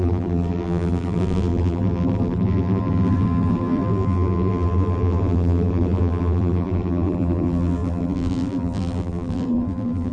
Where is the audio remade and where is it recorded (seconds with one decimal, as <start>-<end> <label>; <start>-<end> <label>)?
0.0-10.1 remade